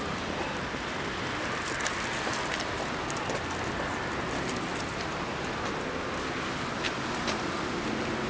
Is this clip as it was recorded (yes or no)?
yes